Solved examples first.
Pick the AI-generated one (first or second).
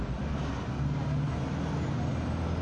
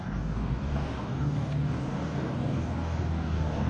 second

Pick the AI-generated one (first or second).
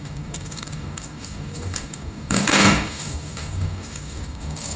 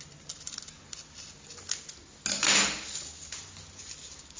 first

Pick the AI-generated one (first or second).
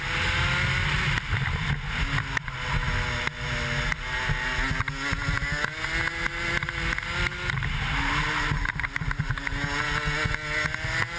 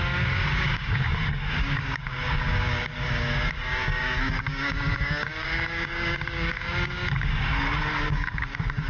second